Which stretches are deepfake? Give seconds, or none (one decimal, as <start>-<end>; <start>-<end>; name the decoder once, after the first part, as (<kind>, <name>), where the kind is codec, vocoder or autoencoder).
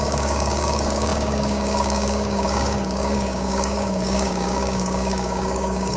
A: 0.0-6.0 (codec, DAC)